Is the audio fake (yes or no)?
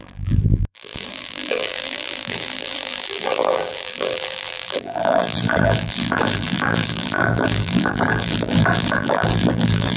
yes